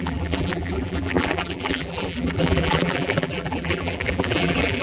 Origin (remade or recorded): remade